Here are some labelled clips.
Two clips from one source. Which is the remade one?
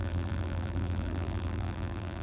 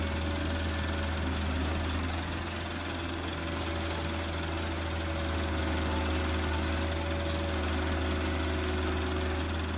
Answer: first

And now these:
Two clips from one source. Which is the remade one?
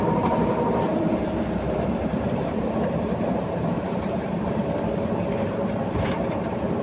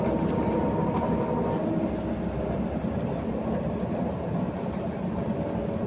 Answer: first